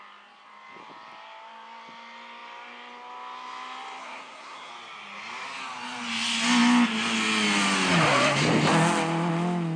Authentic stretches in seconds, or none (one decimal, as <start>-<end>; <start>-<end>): 0.0-4.0; 4.7-9.8